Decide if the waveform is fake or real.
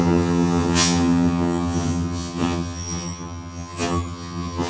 fake